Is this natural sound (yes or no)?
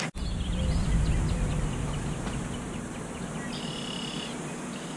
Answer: yes